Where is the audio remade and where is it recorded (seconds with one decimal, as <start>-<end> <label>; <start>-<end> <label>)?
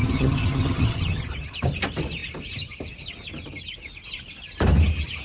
0.0-1.3 remade; 1.3-5.2 recorded